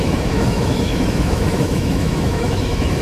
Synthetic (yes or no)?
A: yes